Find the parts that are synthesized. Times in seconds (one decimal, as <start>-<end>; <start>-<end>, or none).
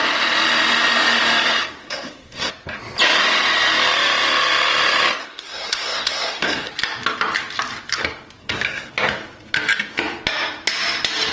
1.8-2.5; 5.2-6.7; 8.4-8.9